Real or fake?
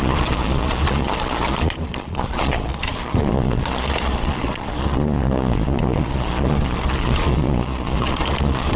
fake